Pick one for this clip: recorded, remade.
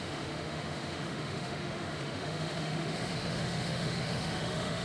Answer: remade